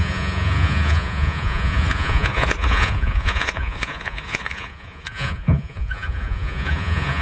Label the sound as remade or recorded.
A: remade